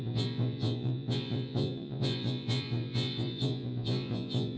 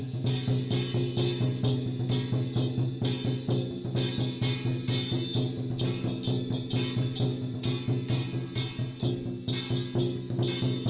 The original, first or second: second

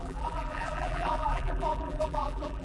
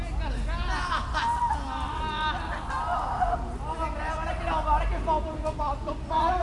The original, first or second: second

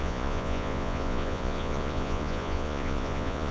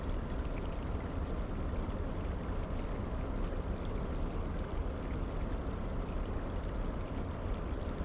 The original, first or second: second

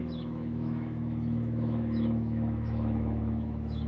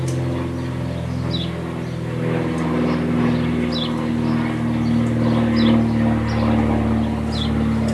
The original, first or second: second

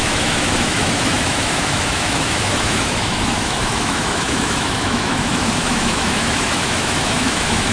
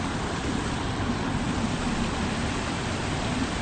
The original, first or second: second